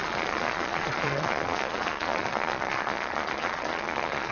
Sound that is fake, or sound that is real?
fake